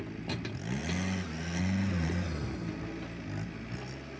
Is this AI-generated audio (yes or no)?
no